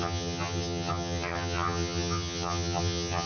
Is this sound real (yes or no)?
no